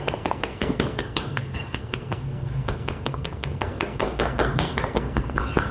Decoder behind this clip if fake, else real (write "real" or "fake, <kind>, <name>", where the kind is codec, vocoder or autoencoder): fake, codec, SNAC